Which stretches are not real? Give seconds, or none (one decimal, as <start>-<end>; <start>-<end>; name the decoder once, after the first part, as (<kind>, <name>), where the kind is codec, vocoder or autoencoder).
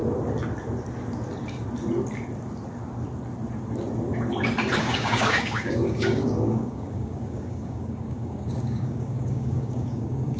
4.8-10.4 (codec, DAC)